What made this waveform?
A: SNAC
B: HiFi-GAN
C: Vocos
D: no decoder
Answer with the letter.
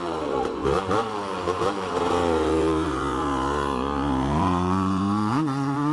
C